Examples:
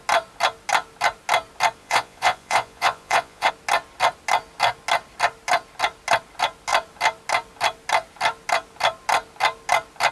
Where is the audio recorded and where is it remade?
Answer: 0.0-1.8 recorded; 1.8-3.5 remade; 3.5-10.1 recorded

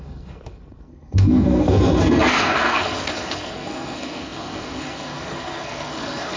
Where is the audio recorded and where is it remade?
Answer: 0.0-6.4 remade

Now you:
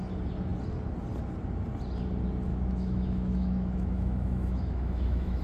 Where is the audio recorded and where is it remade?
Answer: 0.0-2.5 recorded; 2.5-5.4 remade